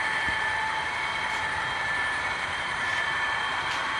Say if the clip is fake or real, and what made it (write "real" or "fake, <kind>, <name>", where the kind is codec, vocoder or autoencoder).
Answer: fake, vocoder, BigVGAN v2